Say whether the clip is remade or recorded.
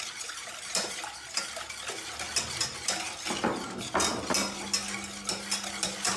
recorded